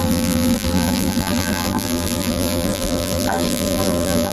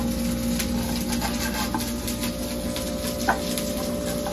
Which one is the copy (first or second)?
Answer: first